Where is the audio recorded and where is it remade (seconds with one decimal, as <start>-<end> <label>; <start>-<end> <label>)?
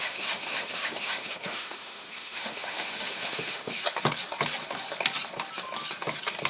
0.0-3.8 remade; 3.8-6.5 recorded